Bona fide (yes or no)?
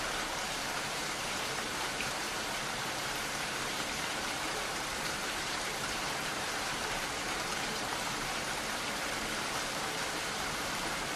no